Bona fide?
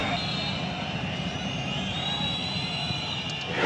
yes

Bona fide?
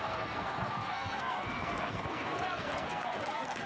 no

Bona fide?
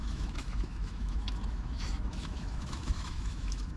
no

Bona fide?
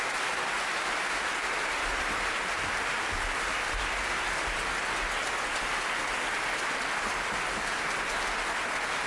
yes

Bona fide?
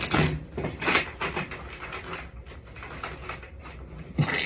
yes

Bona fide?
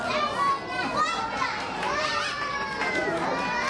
yes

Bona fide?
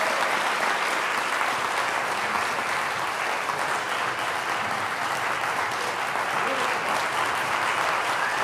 yes